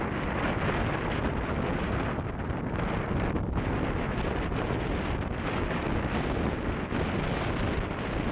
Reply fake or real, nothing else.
real